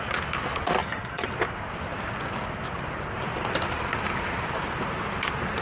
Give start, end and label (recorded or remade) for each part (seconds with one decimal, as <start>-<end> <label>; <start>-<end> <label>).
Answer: 0.0-0.8 recorded; 0.8-1.3 remade; 1.3-5.6 recorded